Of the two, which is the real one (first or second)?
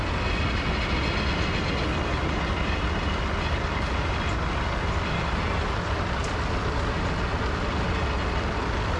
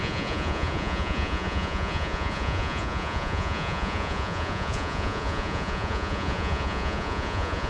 first